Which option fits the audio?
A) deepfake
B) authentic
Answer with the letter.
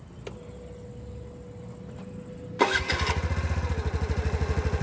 B